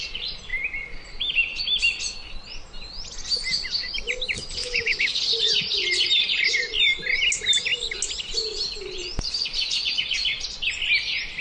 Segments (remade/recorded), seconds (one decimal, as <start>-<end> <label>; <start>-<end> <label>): 0.0-4.6 recorded; 4.6-5.2 remade; 5.2-11.4 recorded